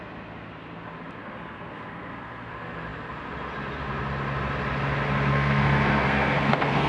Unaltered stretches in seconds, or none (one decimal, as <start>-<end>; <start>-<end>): 0.0-1.2; 2.5-5.3